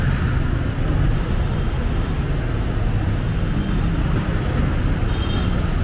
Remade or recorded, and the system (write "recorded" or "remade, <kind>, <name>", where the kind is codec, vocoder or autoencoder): recorded